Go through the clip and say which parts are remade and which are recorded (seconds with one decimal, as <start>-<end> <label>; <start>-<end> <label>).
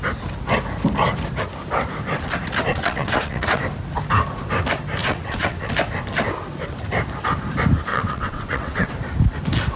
0.0-2.7 recorded; 2.7-3.6 remade; 3.6-5.0 recorded; 5.0-5.7 remade; 5.7-7.9 recorded; 7.9-8.9 remade; 8.9-9.8 recorded